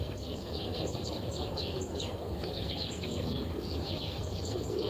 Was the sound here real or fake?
fake